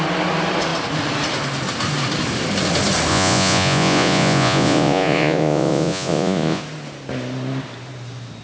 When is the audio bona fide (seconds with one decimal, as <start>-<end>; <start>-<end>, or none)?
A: 0.0-3.1; 6.6-8.4